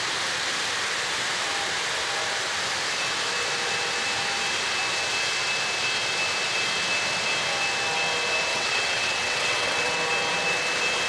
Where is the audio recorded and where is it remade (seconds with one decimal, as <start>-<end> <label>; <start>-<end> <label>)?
0.0-8.5 recorded; 8.5-9.9 remade; 9.9-11.1 recorded

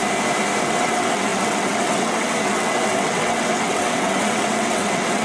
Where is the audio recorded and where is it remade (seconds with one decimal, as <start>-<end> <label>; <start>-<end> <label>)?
0.0-0.6 recorded; 0.6-5.2 remade

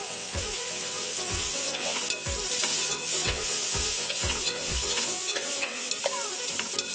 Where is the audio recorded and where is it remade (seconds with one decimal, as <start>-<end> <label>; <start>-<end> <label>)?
0.0-2.0 remade; 2.0-2.7 recorded; 2.7-5.9 remade; 5.9-6.9 recorded